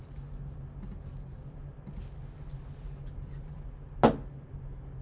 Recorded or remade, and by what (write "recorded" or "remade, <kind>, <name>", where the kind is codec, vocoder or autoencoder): recorded